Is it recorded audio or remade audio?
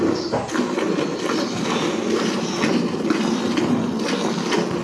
recorded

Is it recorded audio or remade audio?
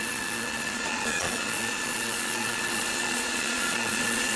remade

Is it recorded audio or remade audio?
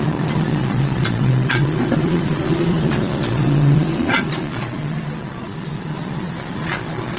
remade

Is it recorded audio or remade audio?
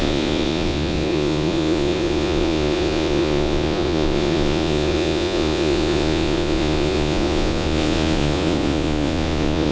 remade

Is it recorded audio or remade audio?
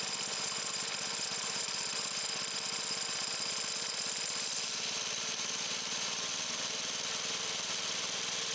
recorded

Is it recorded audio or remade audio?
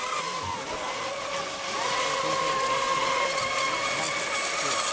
recorded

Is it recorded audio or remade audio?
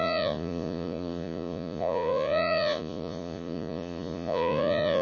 remade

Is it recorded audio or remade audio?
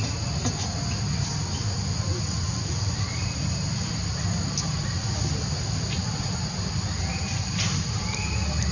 recorded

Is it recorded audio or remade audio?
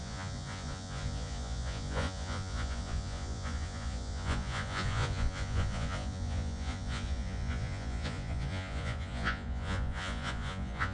remade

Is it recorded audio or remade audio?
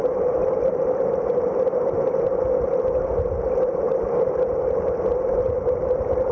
recorded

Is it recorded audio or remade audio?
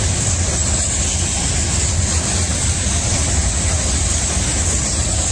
recorded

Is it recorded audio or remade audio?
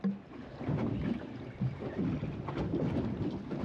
recorded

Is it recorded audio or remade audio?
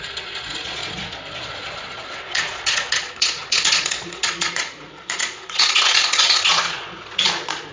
remade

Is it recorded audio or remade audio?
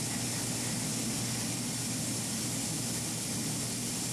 recorded